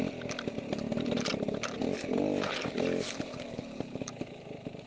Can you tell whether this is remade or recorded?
recorded